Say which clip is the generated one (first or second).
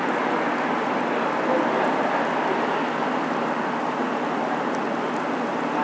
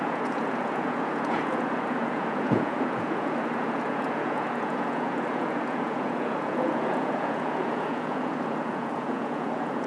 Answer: second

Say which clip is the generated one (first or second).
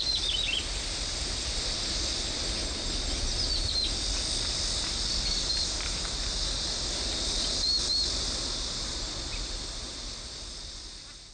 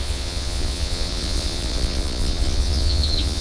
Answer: second